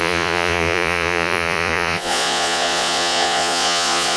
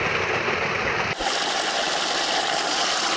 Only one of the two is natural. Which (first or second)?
second